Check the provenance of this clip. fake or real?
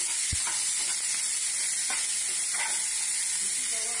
real